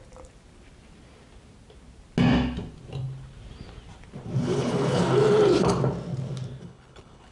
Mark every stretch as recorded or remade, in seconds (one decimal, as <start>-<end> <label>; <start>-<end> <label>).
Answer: 0.0-4.4 recorded; 4.4-5.0 remade; 5.0-6.6 recorded; 6.6-7.3 remade